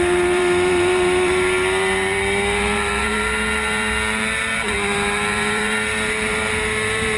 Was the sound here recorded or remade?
remade